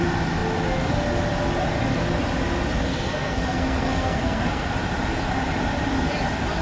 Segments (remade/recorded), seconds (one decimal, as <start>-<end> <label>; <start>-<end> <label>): 0.0-2.9 recorded; 2.9-4.7 remade; 4.7-6.6 recorded